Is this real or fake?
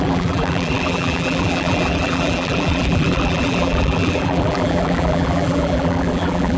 fake